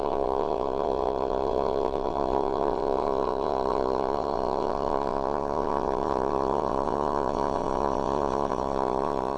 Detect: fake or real fake